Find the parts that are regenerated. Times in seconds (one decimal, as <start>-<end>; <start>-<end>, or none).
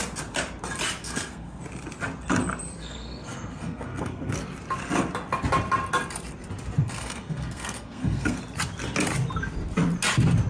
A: 1.0-1.6; 2.8-4.3; 6.8-8.4